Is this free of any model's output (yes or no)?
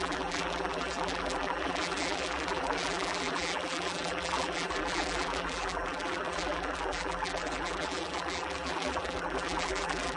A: no